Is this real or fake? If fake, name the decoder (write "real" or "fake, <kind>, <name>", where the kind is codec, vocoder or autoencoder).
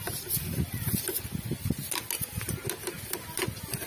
real